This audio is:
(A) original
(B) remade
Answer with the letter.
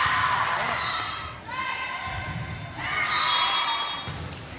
A